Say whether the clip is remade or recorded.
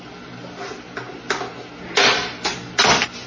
recorded